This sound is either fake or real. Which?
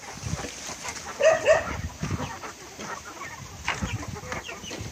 real